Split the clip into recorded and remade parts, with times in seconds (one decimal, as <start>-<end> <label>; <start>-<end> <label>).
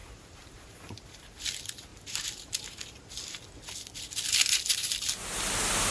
0.0-1.2 remade; 1.2-1.9 recorded; 1.9-2.8 remade; 2.8-4.8 recorded; 4.8-5.4 remade; 5.4-5.9 recorded